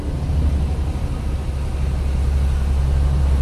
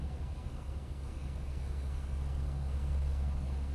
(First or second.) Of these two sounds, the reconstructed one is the second